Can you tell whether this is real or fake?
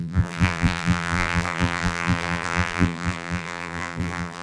fake